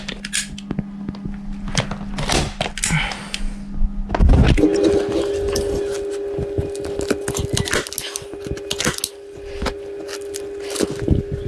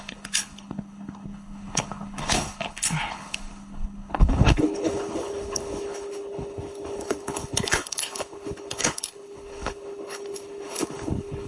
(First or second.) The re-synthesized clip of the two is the second